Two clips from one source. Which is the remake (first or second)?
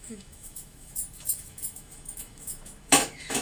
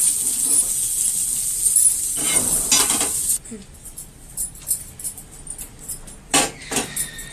first